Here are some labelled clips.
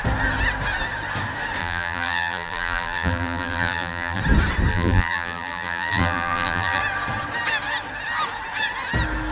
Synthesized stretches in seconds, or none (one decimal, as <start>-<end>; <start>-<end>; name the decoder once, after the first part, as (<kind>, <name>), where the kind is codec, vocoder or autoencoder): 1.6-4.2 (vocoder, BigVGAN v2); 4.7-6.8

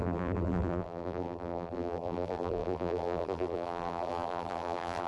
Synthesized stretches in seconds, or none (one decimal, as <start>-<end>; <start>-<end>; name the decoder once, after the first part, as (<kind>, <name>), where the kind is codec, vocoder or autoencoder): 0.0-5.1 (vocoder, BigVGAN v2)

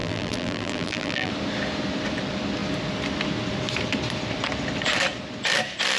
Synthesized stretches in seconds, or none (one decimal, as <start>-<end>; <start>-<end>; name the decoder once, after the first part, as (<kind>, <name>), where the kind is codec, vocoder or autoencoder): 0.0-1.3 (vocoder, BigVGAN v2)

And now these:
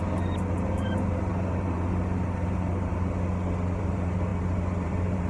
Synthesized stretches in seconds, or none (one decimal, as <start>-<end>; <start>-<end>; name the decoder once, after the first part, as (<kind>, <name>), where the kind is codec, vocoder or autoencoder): 0.0-2.9 (vocoder, BigVGAN v2); 3.8-5.3

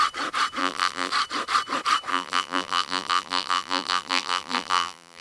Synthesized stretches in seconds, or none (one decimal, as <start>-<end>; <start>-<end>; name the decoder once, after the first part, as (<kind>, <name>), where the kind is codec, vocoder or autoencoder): 0.6-1.1 (vocoder, BigVGAN v2); 2.1-5.2

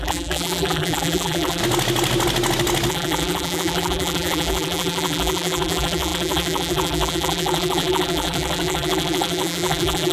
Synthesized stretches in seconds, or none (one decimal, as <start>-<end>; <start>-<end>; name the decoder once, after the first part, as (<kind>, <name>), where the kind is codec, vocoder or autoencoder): 0.0-1.6 (vocoder, BigVGAN v2); 2.9-10.1

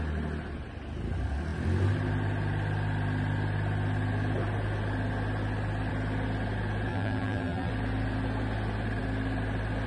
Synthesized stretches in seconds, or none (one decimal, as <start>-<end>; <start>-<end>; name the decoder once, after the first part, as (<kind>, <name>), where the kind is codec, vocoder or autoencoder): 6.9-7.7 (vocoder, BigVGAN v2)